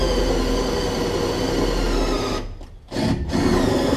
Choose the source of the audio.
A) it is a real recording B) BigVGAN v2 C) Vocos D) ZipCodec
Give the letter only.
A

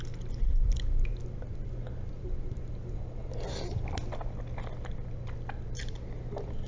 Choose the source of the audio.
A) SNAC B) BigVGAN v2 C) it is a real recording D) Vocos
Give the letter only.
C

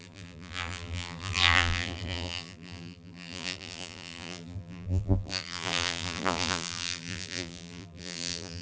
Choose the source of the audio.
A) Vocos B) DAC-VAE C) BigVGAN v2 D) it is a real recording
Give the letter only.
C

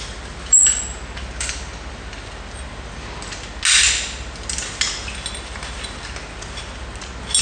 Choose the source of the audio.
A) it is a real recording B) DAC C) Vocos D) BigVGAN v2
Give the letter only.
A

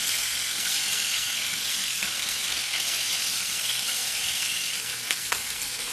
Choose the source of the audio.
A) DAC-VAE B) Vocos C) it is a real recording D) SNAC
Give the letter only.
D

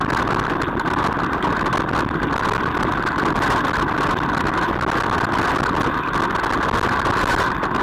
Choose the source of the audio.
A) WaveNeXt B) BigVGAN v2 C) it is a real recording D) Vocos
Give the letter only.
C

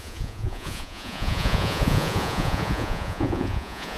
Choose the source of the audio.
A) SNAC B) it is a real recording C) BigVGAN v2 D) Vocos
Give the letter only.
D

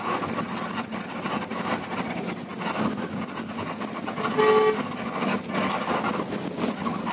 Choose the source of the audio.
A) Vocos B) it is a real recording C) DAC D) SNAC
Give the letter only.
B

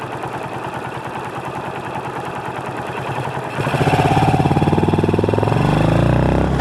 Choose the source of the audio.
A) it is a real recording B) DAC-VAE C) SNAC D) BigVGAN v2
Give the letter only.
A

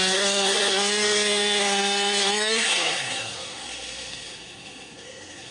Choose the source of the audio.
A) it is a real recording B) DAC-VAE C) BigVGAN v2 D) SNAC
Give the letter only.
D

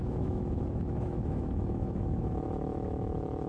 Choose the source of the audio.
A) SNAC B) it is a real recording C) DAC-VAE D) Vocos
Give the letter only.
C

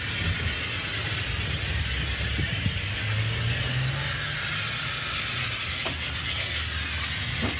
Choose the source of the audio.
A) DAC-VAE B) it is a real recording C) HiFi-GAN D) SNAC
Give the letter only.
B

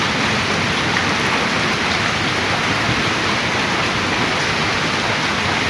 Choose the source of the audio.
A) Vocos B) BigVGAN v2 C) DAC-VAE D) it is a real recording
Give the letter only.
D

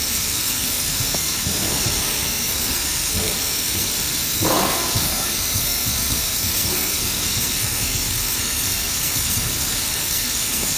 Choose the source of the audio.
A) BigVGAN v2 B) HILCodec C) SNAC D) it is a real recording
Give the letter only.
C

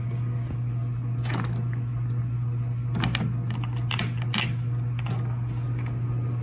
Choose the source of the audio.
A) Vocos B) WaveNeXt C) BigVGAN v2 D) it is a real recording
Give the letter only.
D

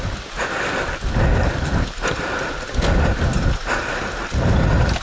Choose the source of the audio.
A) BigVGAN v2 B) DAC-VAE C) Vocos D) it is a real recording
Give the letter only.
D